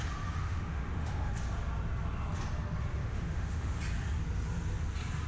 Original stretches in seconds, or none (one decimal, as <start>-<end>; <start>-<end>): 0.0-0.4; 1.3-3.0; 3.8-5.3